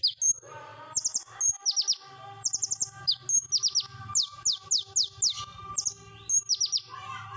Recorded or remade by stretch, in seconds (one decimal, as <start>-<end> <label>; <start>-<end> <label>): 0.0-7.4 recorded